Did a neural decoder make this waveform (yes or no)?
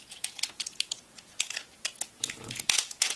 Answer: yes